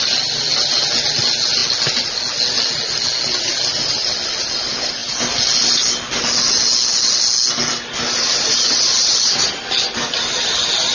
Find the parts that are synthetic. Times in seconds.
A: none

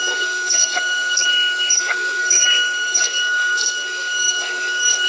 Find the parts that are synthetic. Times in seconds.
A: 0.0-1.3 (codec, SNAC); 1.8-5.1

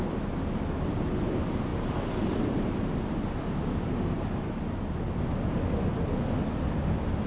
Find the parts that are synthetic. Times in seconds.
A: none